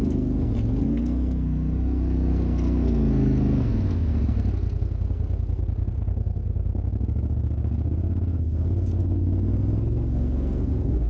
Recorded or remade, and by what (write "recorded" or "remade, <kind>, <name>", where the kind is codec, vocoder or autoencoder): remade, codec, SNAC